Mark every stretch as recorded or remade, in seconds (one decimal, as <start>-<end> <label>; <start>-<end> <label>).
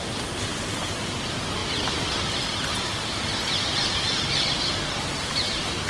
0.0-5.9 recorded